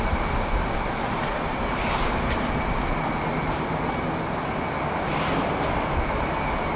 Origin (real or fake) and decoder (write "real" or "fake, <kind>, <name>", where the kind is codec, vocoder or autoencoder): real